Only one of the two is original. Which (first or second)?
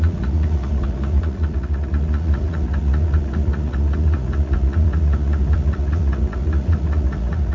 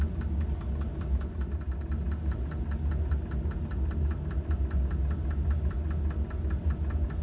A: second